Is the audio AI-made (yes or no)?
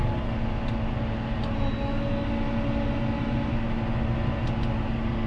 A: no